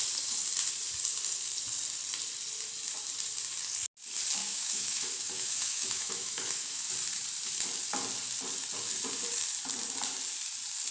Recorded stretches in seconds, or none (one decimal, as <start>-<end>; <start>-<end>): 0.0-4.4; 6.9-10.9